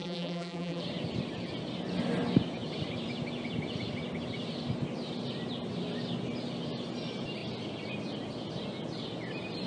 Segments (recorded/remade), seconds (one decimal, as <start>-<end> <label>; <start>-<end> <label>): 0.0-0.8 remade; 0.8-9.7 recorded